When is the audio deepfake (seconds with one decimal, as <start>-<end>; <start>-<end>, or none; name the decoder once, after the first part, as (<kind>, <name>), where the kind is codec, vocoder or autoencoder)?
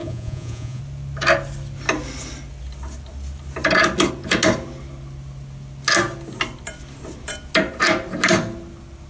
0.0-0.8 (vocoder, Vocos)